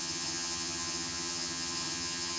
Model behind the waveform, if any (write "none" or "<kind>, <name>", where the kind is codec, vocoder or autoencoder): vocoder, HiFi-GAN